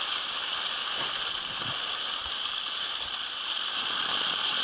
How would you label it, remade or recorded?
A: recorded